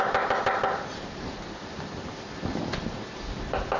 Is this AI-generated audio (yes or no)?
no